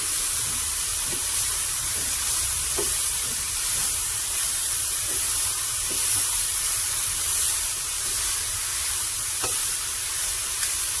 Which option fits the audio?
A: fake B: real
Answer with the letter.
A